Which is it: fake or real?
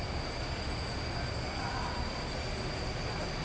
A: real